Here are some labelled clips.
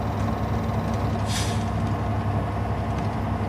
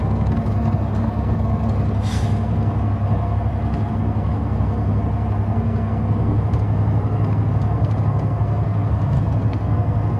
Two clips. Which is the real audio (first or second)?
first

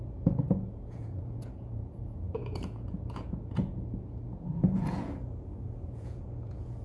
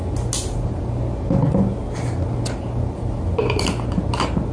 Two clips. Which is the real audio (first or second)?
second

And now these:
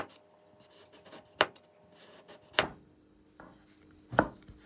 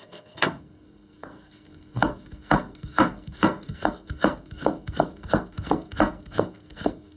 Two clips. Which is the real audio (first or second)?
first